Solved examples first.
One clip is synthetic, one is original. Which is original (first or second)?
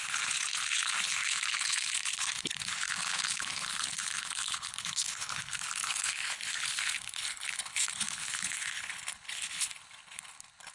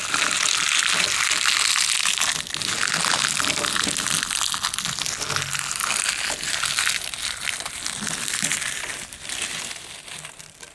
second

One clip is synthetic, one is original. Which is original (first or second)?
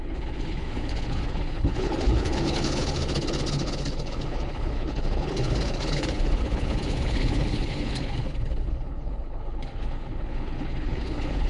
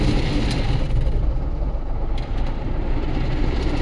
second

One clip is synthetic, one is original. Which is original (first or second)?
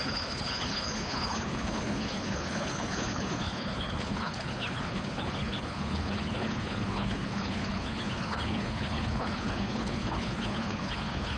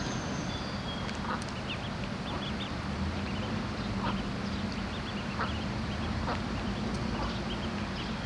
second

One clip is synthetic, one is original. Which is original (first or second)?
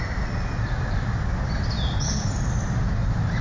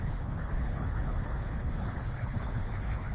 first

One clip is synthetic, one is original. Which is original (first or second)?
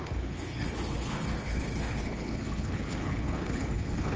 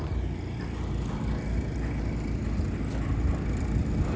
second